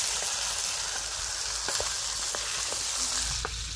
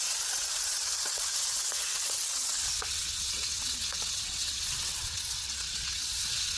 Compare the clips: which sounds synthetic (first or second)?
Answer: second